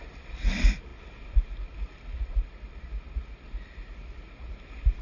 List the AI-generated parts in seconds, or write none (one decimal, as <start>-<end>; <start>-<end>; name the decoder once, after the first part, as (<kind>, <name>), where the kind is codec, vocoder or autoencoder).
none